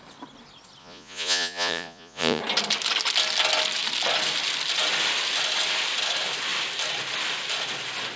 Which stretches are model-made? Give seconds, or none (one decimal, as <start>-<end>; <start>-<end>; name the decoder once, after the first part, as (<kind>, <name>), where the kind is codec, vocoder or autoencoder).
0.8-2.4 (vocoder, Vocos)